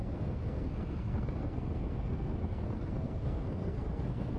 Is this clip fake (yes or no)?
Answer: yes